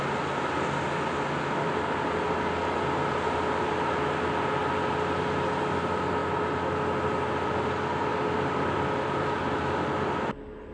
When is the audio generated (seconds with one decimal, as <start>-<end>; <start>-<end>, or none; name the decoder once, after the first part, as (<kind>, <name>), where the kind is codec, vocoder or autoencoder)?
8.1-9.4 (vocoder, BigVGAN v2)